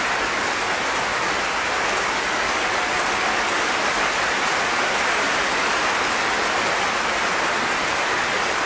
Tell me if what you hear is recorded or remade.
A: recorded